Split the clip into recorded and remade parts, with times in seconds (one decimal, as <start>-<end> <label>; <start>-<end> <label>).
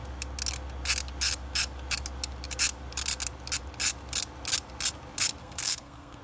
0.0-5.4 recorded; 5.4-6.2 remade